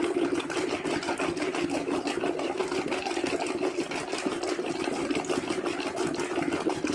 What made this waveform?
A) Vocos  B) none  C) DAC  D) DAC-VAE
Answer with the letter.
B